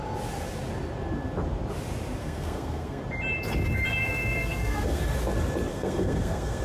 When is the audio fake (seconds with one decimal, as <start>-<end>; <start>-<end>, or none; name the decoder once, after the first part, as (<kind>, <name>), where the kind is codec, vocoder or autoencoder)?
2.2-3.0 (codec, SNAC); 3.9-5.0; 5.7-6.6